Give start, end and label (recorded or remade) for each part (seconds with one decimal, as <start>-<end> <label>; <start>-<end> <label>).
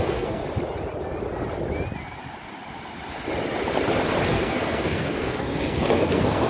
0.0-0.4 remade; 0.4-4.3 recorded; 4.3-6.5 remade